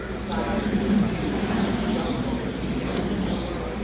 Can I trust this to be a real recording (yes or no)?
yes